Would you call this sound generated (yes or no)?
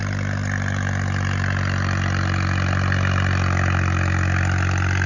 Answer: no